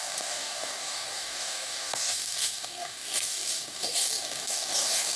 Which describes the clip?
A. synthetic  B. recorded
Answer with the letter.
A